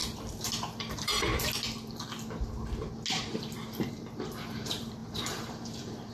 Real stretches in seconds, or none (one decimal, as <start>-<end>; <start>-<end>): 1.3-3.9

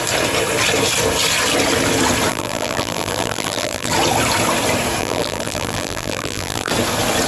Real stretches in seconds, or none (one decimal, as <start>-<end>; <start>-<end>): 0.0-2.3; 3.9-5.0; 6.7-7.3